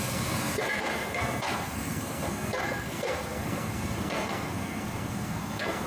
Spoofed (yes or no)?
yes